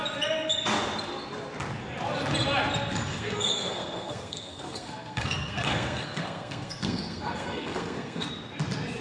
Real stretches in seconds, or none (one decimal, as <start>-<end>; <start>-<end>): 0.0-3.1; 8.3-9.0